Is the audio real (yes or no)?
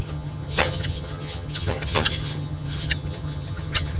no